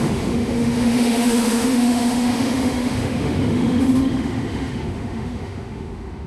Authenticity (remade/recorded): remade